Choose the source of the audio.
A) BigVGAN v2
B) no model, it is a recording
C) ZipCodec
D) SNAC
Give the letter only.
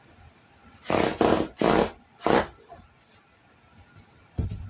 B